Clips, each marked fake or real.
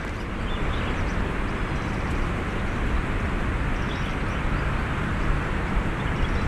real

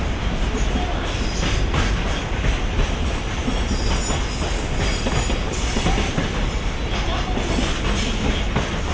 real